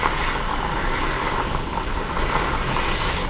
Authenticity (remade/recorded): remade